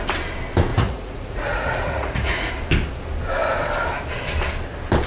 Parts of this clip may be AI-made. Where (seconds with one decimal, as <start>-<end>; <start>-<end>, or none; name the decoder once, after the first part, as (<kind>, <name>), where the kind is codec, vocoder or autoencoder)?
0.7-2.5 (vocoder, Vocos)